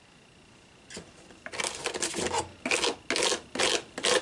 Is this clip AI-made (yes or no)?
no